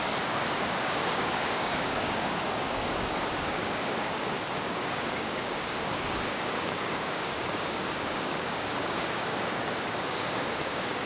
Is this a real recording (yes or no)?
no